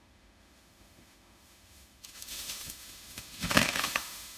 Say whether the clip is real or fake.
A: fake